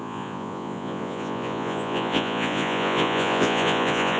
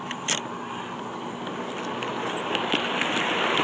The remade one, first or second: first